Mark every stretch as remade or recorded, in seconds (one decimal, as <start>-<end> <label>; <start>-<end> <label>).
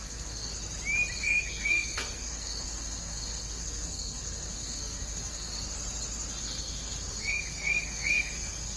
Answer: 0.0-0.5 remade; 0.5-1.2 recorded; 1.2-5.5 remade; 5.5-6.4 recorded; 6.4-8.8 remade